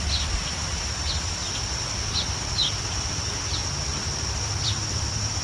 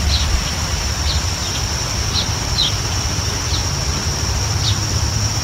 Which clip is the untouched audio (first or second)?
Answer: first